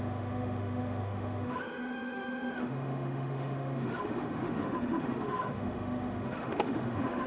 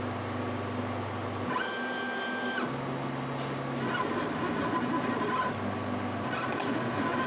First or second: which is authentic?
second